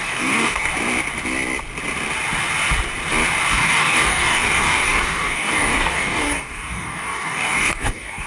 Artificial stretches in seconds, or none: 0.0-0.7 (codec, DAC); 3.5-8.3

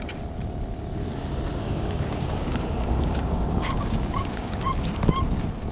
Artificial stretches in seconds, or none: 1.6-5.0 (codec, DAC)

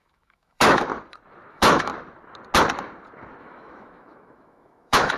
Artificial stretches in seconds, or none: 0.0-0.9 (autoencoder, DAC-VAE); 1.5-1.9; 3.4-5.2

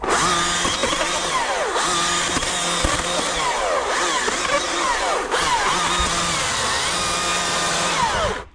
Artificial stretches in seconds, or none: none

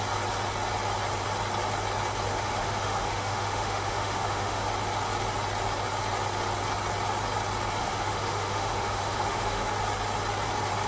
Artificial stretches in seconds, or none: 2.3-4.7 (autoencoder, DAC-VAE); 7.8-9.7

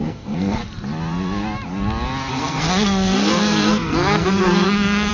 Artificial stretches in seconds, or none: 0.0-0.6 (codec, SNAC); 2.3-5.1